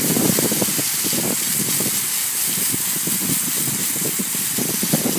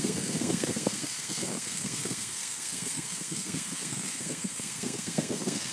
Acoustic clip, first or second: first